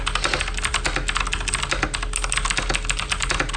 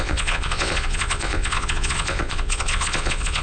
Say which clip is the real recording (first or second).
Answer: first